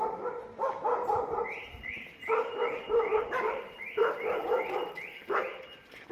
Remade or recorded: remade